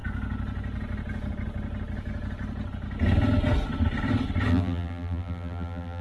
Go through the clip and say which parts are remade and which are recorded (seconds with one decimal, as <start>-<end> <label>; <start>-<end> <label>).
0.0-4.5 recorded; 4.5-6.0 remade

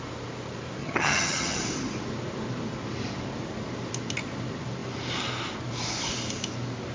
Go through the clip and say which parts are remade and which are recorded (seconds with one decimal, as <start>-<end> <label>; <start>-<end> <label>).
0.0-0.8 recorded; 0.8-1.6 remade; 1.6-6.9 recorded

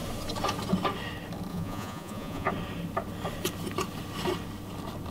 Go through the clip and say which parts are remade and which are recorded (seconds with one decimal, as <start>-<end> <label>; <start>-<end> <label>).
0.0-1.5 recorded; 1.5-2.5 remade; 2.5-5.1 recorded